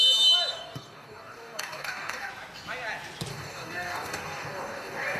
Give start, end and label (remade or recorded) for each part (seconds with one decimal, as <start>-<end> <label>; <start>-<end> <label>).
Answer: 0.0-0.5 recorded; 0.5-2.3 remade; 2.3-3.3 recorded; 3.3-5.2 remade

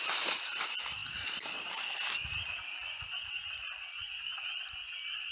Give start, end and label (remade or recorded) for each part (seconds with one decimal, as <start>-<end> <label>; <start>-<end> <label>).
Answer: 0.0-5.3 recorded

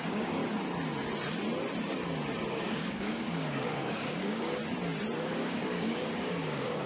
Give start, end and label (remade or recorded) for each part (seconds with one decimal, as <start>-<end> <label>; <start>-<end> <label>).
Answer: 0.0-0.4 remade; 0.4-2.5 recorded; 2.5-4.6 remade; 4.6-5.2 recorded; 5.2-6.9 remade